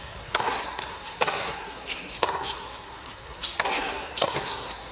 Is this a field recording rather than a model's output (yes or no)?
no